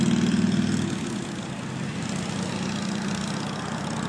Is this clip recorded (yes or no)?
yes